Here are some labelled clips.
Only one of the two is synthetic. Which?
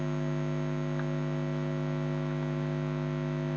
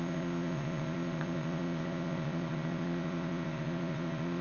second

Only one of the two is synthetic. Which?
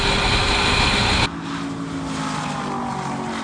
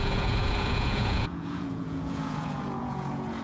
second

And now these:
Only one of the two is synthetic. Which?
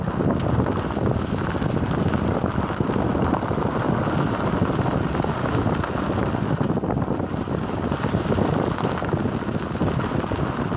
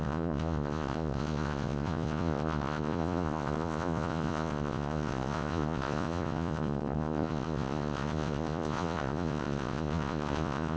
second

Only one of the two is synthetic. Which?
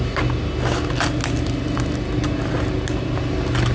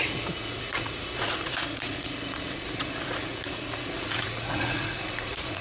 second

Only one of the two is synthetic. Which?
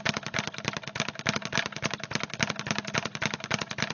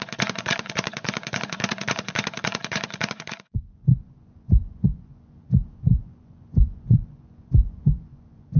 second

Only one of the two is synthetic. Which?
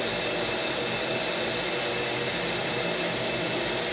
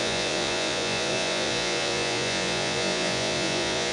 second